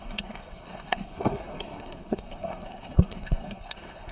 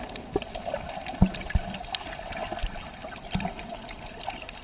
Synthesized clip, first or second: first